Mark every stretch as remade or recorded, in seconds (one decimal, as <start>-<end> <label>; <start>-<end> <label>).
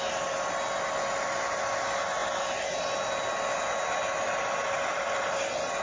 0.0-5.8 recorded